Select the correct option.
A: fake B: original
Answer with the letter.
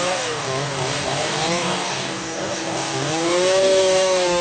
A